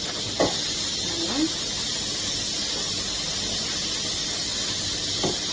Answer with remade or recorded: recorded